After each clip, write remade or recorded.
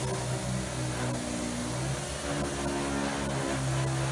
recorded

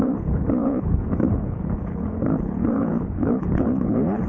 remade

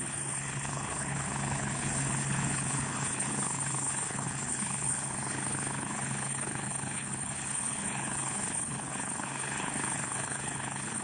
remade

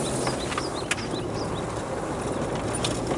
recorded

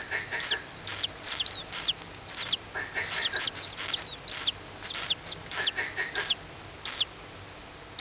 recorded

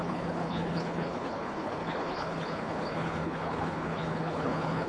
remade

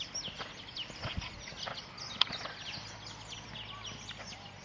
recorded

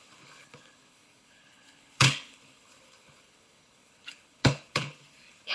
remade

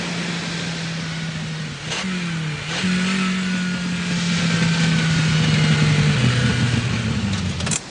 recorded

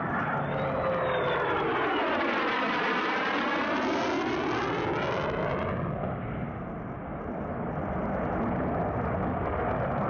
recorded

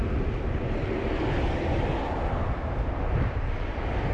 recorded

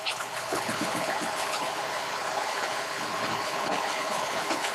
remade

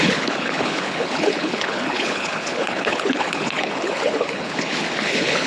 remade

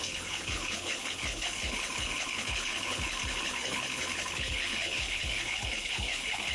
remade